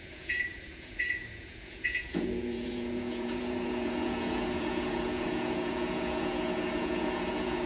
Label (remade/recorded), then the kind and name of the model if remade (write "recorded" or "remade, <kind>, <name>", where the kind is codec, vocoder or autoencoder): remade, vocoder, Vocos